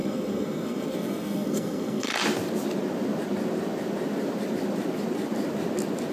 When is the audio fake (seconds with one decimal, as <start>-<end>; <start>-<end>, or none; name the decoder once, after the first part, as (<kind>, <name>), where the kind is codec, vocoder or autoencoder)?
0.0-2.1 (codec, SNAC)

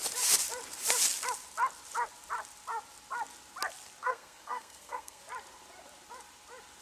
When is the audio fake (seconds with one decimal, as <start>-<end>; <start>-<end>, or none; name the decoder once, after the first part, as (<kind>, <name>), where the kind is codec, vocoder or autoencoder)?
4.0-5.2 (codec, SNAC)